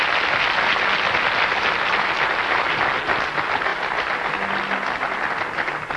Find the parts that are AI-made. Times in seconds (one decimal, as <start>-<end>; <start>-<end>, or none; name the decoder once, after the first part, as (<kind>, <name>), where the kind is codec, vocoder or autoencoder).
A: 3.7-4.3 (vocoder, BigVGAN v2)